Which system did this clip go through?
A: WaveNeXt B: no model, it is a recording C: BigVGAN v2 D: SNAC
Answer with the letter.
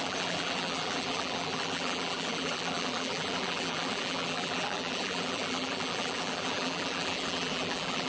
C